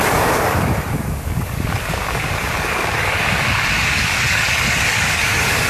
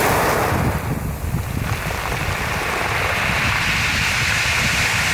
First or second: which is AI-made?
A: first